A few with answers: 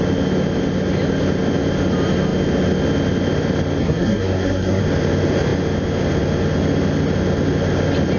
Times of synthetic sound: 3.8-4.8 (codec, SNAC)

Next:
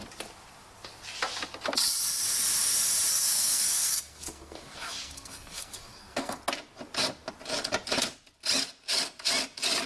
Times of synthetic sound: 3.1-6.4 (codec, SNAC)

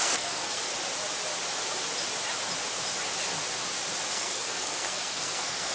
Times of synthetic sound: 0.0-0.7 (codec, SNAC); 4.1-5.7

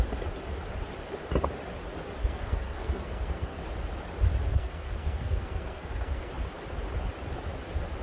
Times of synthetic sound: 2.2-3.6 (codec, SNAC); 4.5-6.3

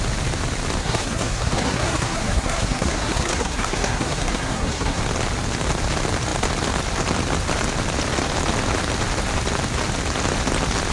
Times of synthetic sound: 0.8-5.0 (codec, SNAC)

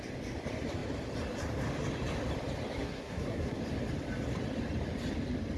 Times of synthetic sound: 2.8-3.6 (codec, SNAC)